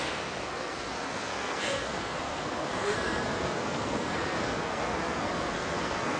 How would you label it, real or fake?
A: fake